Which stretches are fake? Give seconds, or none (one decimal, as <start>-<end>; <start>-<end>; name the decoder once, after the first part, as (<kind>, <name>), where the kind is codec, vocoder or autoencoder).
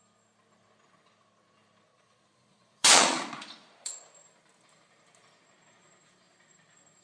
1.9-3.9 (vocoder, Vocos)